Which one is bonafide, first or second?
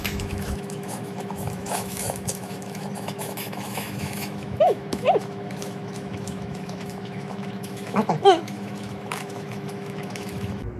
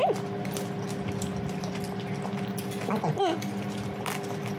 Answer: second